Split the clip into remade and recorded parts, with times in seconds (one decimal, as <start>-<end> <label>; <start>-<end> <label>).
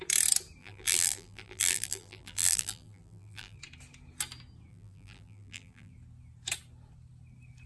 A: 0.0-0.6 recorded; 0.6-3.6 remade; 3.6-4.7 recorded; 4.7-5.9 remade; 5.9-7.7 recorded